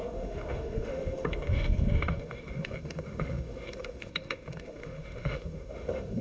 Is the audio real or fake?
fake